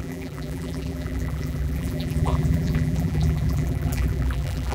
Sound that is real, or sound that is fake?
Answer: fake